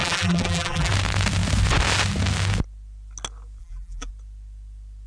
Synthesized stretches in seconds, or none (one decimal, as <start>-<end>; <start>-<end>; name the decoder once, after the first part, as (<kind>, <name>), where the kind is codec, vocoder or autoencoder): 0.0-0.9 (vocoder, BigVGAN v2); 3.6-4.1